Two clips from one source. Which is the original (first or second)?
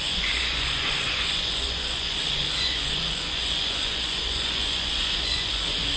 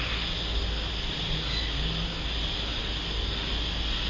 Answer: second